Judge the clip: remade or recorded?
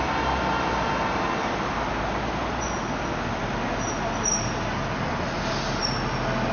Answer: recorded